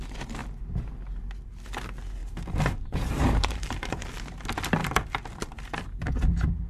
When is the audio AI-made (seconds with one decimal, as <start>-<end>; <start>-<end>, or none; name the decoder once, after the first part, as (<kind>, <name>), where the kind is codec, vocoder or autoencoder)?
2.2-4.1 (vocoder, BigVGAN v2); 4.8-6.0

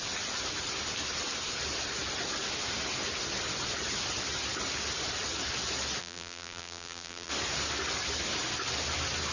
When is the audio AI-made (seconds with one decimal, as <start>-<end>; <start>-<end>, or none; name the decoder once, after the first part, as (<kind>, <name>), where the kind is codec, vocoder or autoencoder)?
6.0-7.3 (vocoder, BigVGAN v2)

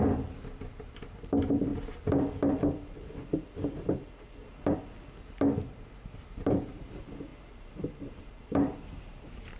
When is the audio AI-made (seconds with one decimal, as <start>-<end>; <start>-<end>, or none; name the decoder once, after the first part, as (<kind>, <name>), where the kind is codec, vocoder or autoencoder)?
0.0-1.7 (vocoder, BigVGAN v2); 5.7-9.6

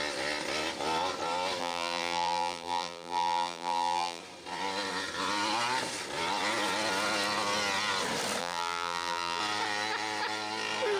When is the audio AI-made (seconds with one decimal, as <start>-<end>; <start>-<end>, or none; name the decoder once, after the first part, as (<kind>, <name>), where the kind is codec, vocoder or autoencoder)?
1.6-4.2 (vocoder, BigVGAN v2); 8.4-9.4